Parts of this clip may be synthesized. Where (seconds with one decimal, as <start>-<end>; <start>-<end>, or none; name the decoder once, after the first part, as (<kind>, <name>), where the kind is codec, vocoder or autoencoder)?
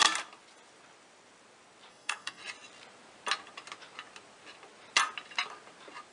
1.9-2.4 (codec, SNAC)